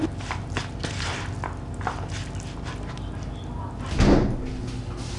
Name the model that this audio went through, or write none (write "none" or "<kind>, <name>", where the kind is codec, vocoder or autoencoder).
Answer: none